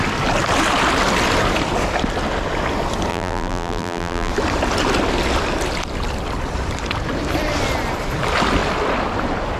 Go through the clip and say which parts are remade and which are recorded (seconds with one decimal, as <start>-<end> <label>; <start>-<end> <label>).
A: 0.0-3.1 recorded; 3.1-4.3 remade; 4.3-9.6 recorded